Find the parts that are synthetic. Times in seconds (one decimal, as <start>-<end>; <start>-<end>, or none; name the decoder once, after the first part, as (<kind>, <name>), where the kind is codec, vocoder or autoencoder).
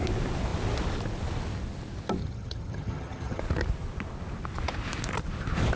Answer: 2.2-3.4 (vocoder, HiFi-GAN)